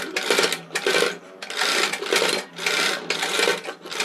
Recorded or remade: recorded